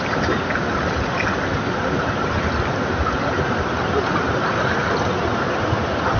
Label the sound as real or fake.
fake